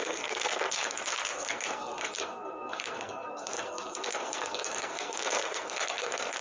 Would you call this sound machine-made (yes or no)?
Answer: yes